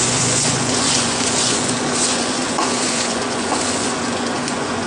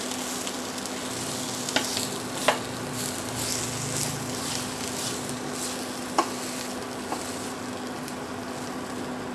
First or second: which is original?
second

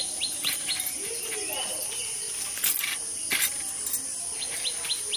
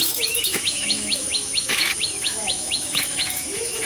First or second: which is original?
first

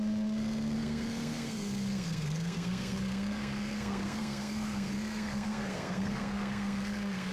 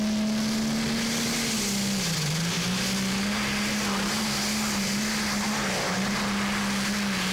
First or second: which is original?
second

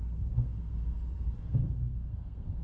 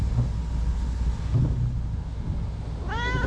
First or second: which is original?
second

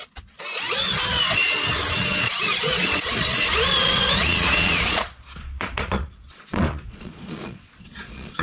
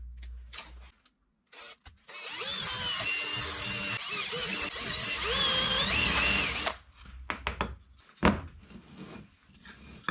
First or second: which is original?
second